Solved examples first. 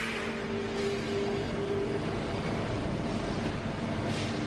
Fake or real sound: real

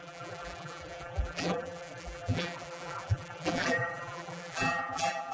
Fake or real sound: fake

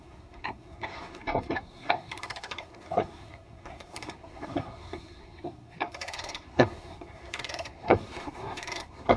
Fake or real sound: fake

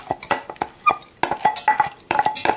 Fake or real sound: real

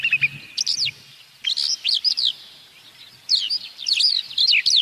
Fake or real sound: real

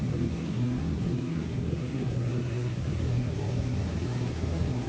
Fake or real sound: fake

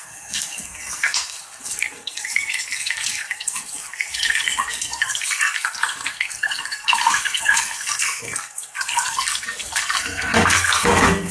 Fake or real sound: fake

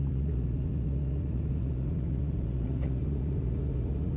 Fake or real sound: fake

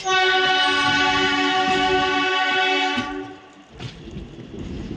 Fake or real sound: real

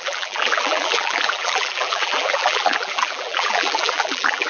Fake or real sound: fake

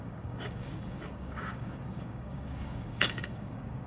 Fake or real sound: fake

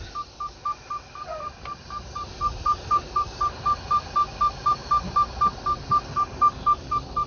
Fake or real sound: fake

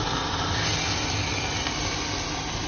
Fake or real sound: real